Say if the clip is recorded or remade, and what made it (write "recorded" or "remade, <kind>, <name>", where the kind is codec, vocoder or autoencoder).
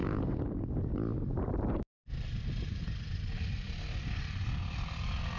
recorded